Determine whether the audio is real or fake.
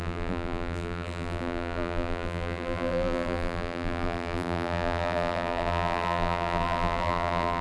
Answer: fake